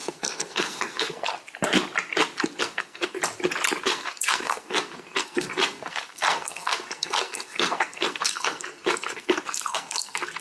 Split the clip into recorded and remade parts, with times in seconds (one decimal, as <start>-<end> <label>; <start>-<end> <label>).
0.0-1.3 remade; 1.3-2.6 recorded; 2.6-3.2 remade; 3.2-3.8 recorded; 3.8-10.4 remade